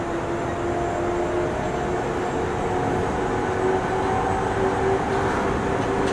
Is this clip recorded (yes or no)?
yes